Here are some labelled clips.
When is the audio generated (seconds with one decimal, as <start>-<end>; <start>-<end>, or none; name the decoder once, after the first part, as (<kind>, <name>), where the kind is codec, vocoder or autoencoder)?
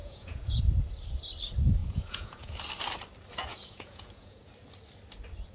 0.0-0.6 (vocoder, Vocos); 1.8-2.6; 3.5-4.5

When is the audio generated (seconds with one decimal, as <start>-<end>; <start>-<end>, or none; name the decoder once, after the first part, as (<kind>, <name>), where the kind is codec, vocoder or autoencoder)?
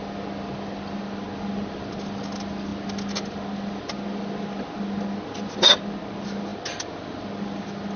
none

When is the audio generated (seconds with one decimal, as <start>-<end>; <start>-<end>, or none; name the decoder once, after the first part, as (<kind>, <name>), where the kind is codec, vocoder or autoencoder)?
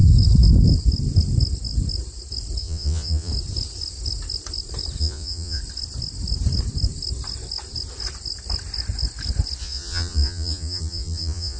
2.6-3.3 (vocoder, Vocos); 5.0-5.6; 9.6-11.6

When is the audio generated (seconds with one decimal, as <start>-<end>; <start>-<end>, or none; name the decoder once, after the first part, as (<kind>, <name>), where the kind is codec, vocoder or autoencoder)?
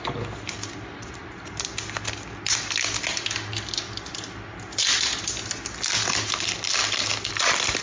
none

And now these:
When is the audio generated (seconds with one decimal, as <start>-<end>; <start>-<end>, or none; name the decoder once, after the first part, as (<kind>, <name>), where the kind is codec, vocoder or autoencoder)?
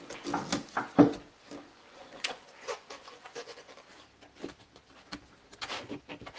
1.7-3.7 (vocoder, Vocos)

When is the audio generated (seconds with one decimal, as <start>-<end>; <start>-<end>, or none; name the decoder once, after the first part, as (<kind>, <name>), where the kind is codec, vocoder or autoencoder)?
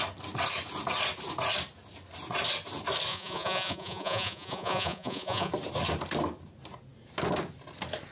3.1-5.5 (vocoder, Vocos)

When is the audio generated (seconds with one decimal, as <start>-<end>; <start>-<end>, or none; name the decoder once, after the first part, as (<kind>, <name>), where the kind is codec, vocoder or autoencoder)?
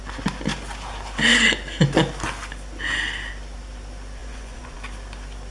4.2-4.8 (vocoder, Vocos)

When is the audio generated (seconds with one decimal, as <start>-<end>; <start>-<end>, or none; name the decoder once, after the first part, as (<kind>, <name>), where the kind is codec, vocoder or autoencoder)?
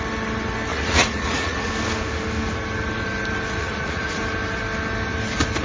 0.7-1.7 (vocoder, Vocos); 3.6-4.2